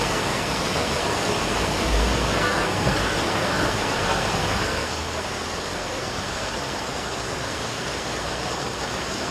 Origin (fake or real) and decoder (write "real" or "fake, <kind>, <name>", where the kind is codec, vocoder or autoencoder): fake, codec, SNAC